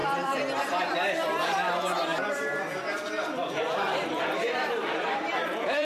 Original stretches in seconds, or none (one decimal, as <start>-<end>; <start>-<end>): 0.0-3.5